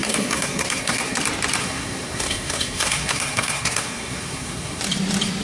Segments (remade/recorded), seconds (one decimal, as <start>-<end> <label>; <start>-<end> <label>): 0.0-1.2 remade; 1.2-1.6 recorded; 1.6-4.8 remade; 4.8-5.4 recorded